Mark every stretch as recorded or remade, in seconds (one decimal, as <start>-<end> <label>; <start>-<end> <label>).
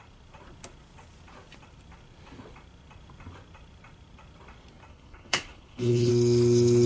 0.0-4.9 recorded; 4.9-6.1 remade; 6.1-6.9 recorded